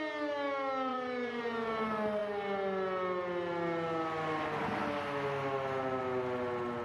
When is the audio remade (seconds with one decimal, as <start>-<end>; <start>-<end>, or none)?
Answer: 0.9-1.4